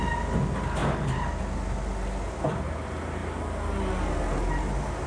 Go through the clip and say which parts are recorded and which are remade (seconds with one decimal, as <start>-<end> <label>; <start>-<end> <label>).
0.0-5.1 recorded